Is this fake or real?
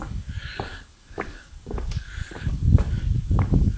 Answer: fake